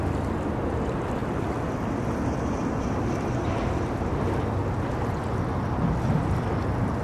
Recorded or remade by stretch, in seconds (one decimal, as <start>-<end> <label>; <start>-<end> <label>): 0.0-1.2 recorded; 1.2-3.3 remade; 3.3-7.0 recorded